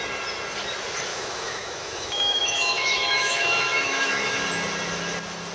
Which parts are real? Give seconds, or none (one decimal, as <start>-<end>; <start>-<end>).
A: 0.0-1.1; 4.4-5.5